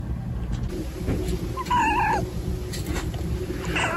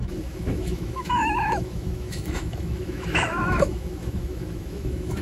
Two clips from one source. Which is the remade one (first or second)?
second